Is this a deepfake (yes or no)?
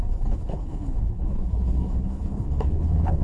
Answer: yes